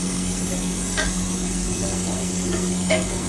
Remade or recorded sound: remade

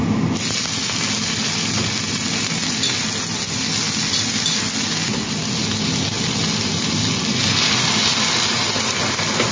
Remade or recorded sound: recorded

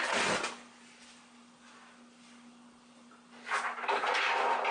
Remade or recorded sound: recorded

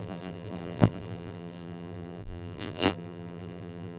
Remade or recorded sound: remade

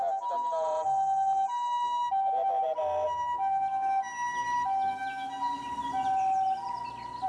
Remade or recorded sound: recorded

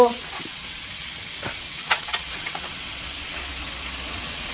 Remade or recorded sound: remade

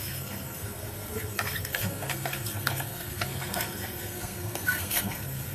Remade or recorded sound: remade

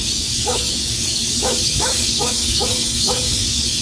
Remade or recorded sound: remade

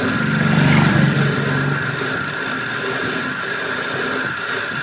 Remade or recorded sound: recorded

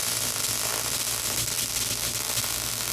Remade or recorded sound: recorded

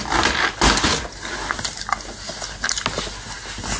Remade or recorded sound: recorded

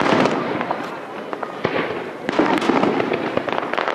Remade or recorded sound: recorded